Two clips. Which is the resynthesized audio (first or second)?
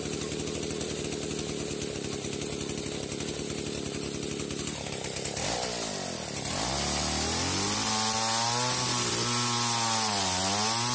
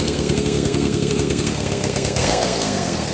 second